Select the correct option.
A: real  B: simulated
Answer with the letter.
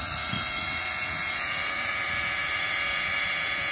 B